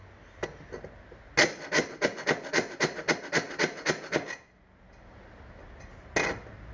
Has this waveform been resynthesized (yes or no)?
no